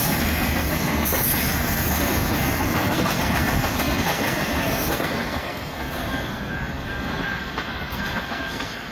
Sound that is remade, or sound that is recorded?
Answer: remade